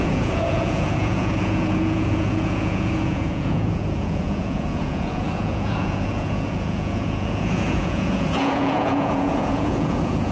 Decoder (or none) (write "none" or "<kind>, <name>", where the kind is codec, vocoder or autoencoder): vocoder, Vocos